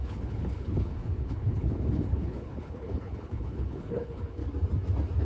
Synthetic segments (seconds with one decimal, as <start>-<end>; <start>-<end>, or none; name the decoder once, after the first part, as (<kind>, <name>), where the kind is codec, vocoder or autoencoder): 0.0-4.4 (codec, HILCodec)

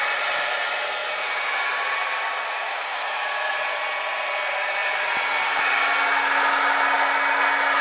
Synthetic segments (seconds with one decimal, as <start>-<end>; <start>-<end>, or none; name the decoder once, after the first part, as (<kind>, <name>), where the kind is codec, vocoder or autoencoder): 1.0-3.3 (vocoder, BigVGAN v2)

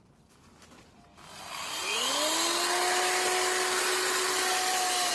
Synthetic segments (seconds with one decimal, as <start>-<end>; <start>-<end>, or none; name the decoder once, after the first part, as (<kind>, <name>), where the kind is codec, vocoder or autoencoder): none

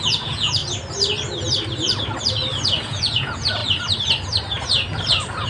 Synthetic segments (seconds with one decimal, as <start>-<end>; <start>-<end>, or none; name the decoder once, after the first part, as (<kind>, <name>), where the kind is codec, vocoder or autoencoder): 0.0-0.6 (vocoder, Vocos); 2.9-3.6

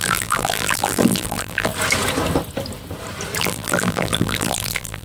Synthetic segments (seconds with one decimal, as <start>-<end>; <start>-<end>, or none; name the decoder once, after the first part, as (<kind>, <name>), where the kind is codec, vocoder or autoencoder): 0.0-1.7 (vocoder, BigVGAN v2); 3.4-5.0

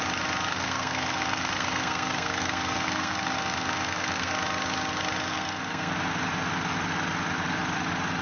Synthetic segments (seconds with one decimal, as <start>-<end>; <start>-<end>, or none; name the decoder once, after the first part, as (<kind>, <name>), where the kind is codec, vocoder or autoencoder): 0.5-4.3 (codec, SNAC); 5.3-5.9

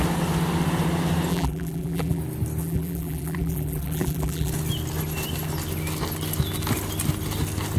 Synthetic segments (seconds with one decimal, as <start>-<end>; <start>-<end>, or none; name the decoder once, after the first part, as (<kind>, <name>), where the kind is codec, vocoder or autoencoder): 1.3-2.2 (vocoder, BigVGAN v2); 2.6-4.5

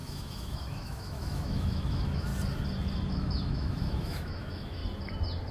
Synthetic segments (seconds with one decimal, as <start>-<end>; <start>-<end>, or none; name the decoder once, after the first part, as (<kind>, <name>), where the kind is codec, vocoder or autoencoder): 0.0-2.3 (autoencoder, DAC-VAE); 3.1-4.8